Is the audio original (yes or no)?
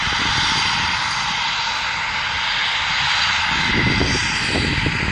yes